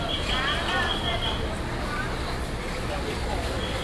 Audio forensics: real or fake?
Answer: real